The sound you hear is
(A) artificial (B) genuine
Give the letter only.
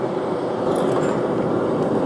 B